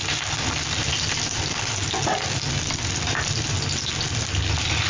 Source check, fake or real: real